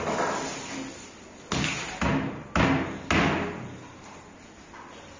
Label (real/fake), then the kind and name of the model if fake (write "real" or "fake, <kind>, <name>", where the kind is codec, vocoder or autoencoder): real